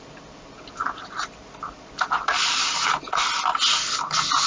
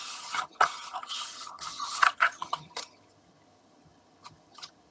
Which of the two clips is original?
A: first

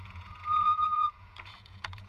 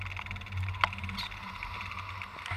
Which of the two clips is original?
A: second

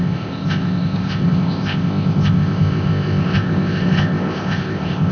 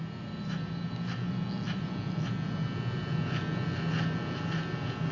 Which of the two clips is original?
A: second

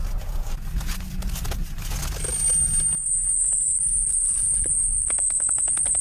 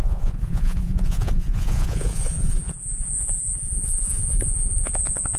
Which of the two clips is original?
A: first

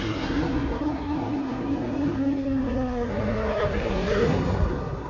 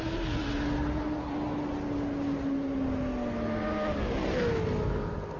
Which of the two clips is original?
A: second